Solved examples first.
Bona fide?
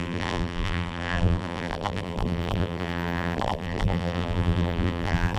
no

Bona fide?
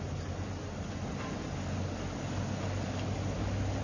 yes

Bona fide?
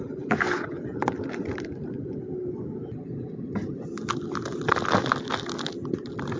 yes